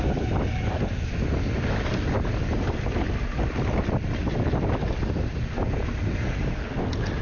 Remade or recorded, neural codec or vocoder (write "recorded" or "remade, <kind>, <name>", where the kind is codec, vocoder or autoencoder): recorded